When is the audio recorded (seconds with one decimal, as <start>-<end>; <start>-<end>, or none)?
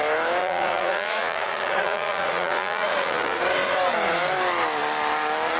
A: 0.0-0.4; 3.4-5.6